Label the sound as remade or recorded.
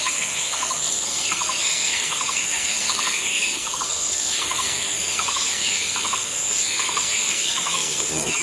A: remade